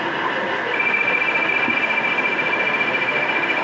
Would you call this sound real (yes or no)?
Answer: yes